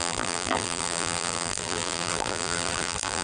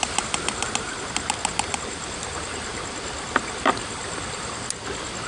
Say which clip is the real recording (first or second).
second